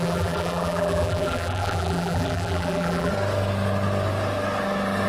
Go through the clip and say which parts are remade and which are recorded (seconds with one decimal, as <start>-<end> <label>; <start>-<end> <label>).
0.0-3.1 remade; 3.1-5.1 recorded